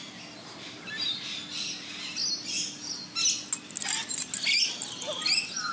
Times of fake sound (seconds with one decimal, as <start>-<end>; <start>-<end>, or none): none